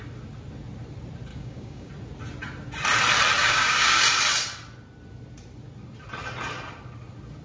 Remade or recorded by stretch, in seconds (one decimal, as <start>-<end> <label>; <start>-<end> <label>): 0.0-1.3 recorded; 1.3-1.9 remade; 1.9-3.4 recorded; 3.4-4.0 remade; 4.0-7.4 recorded

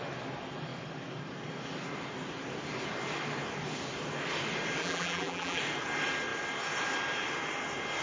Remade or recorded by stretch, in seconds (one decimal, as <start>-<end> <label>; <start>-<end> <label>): 0.0-4.8 recorded; 4.8-5.6 remade; 5.6-8.0 recorded

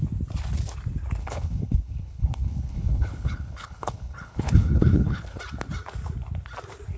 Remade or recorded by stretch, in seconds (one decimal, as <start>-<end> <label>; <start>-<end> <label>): 0.0-1.2 recorded; 1.2-5.4 remade; 5.4-7.0 recorded

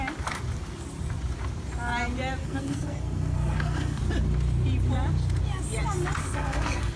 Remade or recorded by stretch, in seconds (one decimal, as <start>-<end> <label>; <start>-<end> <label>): 0.0-2.4 recorded; 2.4-4.0 remade; 4.0-6.2 recorded; 6.2-7.0 remade

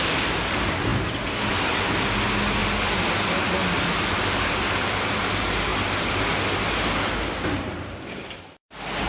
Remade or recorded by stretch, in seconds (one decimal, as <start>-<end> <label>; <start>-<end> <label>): 0.0-2.6 recorded; 2.6-3.9 remade; 3.9-9.1 recorded

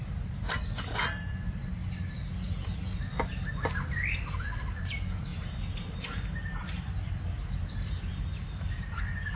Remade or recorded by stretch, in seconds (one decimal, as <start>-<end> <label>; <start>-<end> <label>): 0.0-9.4 recorded